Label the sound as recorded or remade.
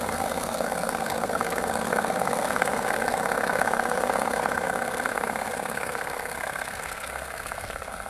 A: remade